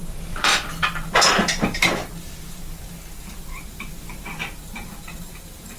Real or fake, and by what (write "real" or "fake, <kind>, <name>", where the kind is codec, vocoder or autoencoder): fake, vocoder, BigVGAN v2